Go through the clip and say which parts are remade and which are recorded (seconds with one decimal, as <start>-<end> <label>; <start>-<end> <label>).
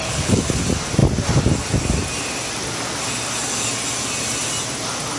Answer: 0.0-0.6 remade; 0.6-5.2 recorded